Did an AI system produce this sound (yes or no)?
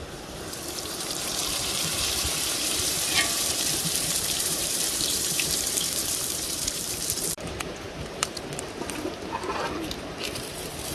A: yes